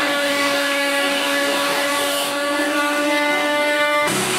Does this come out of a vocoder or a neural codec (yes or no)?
yes